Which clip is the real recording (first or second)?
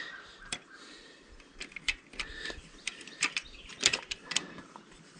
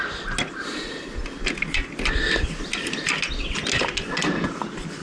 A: second